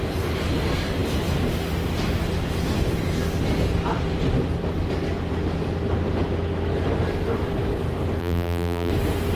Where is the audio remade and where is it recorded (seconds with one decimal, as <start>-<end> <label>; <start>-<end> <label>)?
0.0-8.2 recorded; 8.2-8.9 remade; 8.9-9.4 recorded